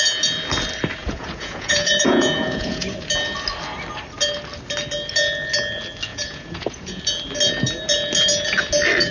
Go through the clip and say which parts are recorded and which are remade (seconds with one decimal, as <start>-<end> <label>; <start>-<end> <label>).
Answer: 0.0-1.0 recorded; 1.0-2.9 remade; 2.9-6.1 recorded; 6.1-7.0 remade; 7.0-9.1 recorded